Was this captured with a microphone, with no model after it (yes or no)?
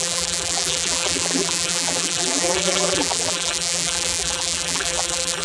no